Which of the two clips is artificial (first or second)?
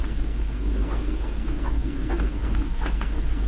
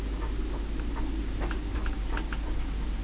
first